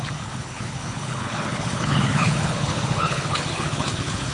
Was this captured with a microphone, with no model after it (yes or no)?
no